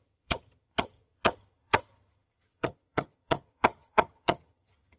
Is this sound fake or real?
fake